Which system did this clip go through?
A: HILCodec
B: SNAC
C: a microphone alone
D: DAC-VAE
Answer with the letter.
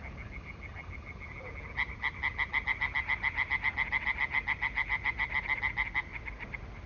C